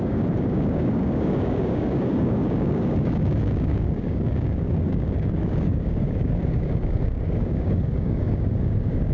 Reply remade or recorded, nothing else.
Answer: remade